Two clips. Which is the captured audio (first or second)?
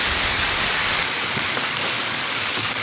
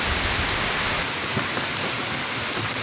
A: second